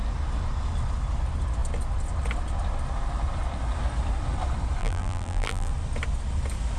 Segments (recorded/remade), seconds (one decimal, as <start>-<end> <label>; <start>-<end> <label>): 0.0-4.8 recorded; 4.8-5.7 remade; 5.7-6.8 recorded